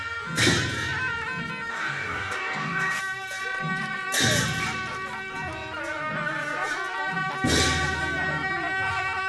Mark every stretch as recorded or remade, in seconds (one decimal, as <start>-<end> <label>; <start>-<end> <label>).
0.0-1.7 recorded; 1.7-3.0 remade; 3.0-9.3 recorded